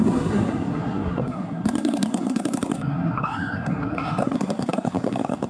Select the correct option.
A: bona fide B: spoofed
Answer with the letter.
B